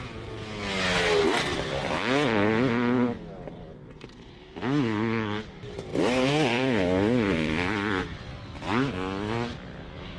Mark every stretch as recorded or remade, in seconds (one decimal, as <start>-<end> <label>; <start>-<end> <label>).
0.0-5.9 recorded; 5.9-8.0 remade; 8.0-10.2 recorded